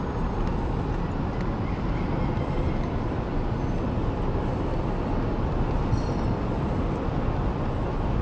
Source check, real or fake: real